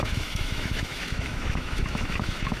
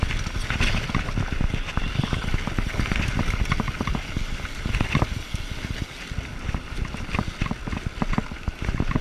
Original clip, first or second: second